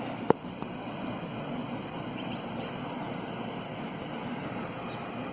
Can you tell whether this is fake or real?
real